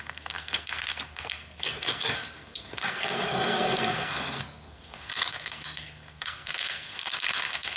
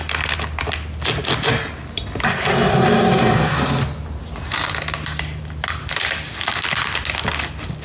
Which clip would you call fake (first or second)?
first